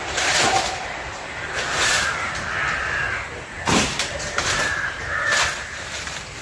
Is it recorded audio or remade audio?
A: remade